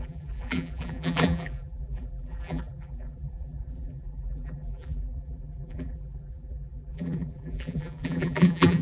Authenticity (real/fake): fake